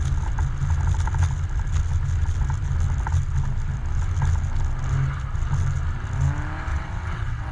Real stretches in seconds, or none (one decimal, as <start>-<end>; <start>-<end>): 0.0-6.7